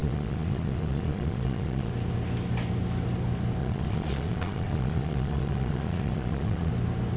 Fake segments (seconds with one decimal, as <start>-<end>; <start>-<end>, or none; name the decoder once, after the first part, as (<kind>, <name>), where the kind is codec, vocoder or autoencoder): 0.0-1.9 (vocoder, Vocos); 3.6-6.7